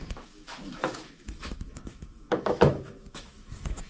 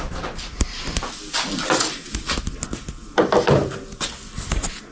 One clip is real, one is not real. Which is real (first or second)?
second